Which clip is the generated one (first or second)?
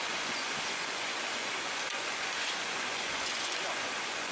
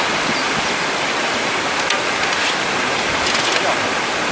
first